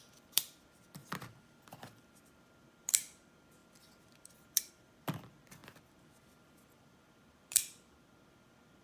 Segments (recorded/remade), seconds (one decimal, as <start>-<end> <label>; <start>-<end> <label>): 0.0-8.8 remade